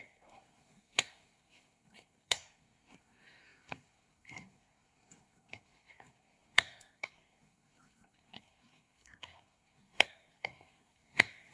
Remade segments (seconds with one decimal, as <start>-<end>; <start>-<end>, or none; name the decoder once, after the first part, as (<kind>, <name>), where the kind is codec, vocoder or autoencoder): 0.0-11.5 (codec, SNAC)